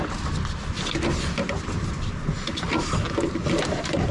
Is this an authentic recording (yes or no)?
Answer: yes